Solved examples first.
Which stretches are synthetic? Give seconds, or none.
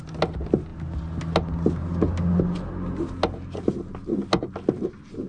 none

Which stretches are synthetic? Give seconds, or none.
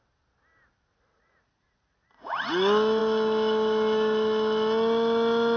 0.9-2.5 (vocoder, Vocos)